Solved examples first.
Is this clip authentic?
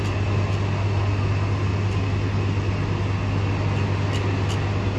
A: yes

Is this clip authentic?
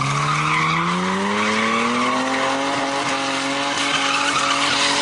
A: yes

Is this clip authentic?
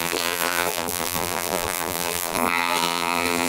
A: no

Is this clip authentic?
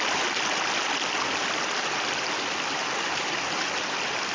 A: yes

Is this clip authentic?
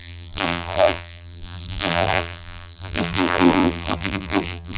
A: no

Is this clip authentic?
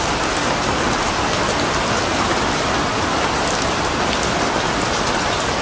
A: yes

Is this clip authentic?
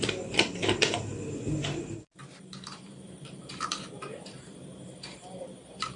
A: no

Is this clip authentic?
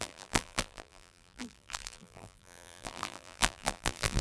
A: no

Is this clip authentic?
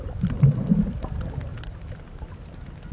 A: no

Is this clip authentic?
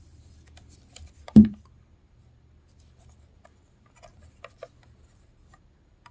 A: no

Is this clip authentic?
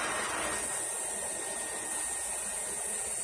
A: yes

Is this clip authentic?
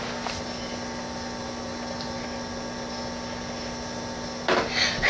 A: yes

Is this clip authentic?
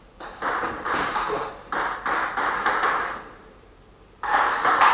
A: no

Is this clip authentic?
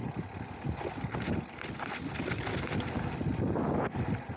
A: yes